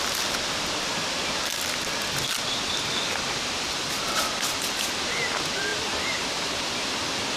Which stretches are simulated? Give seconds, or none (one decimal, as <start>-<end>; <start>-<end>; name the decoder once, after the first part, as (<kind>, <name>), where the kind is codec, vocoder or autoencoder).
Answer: 5.7-6.6 (vocoder, BigVGAN v2)